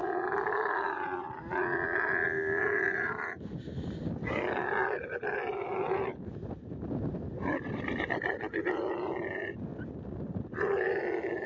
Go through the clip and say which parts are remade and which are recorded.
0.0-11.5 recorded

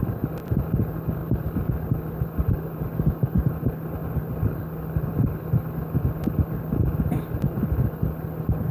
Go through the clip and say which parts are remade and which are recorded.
0.0-8.7 recorded

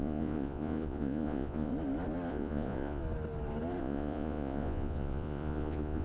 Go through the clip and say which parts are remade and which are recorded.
0.0-1.7 remade; 1.7-2.3 recorded; 2.3-3.0 remade; 3.0-3.8 recorded; 3.8-6.0 remade